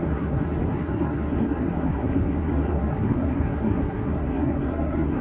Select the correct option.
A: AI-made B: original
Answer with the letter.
A